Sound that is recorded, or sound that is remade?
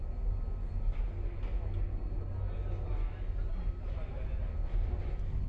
recorded